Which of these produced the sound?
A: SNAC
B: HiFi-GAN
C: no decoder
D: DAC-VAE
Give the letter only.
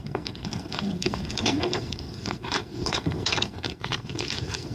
A